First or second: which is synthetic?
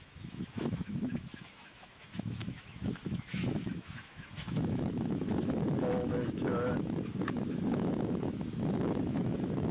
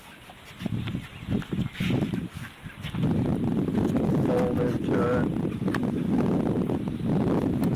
first